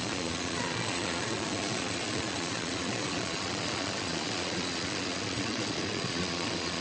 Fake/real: fake